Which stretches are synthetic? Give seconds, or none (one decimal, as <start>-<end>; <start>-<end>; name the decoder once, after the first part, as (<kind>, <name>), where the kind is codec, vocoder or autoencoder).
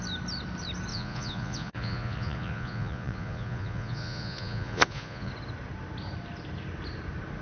0.9-5.3 (vocoder, Vocos)